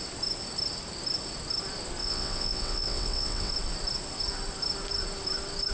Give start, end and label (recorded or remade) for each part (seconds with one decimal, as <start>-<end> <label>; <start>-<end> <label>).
0.0-2.0 recorded; 2.0-3.5 remade; 3.5-5.7 recorded